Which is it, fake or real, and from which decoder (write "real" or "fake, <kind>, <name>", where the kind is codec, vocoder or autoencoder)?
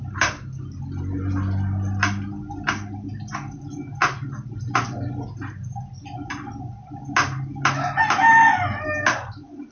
real